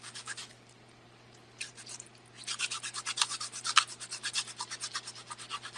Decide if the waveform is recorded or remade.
recorded